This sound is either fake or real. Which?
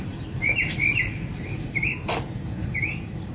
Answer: fake